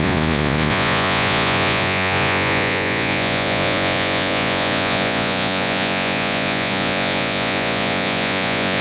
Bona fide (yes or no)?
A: no